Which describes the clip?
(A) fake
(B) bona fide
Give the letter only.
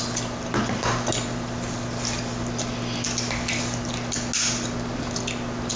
B